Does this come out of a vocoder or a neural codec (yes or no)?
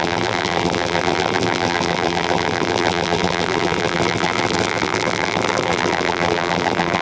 yes